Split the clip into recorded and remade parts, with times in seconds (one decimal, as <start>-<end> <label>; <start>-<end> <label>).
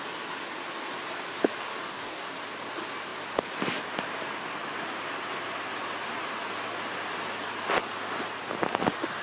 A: 0.0-1.6 recorded; 1.6-2.3 remade; 2.3-9.2 recorded